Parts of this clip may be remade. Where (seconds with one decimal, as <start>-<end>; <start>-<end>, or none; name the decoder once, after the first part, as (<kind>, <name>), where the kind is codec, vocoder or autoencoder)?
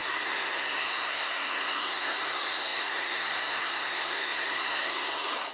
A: 0.0-5.5 (codec, SNAC)